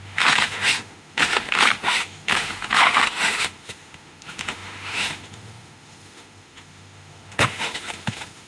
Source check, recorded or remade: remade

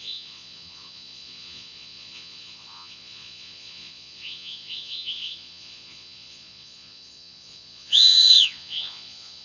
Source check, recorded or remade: remade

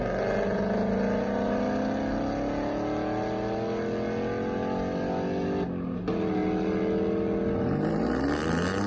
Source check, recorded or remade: recorded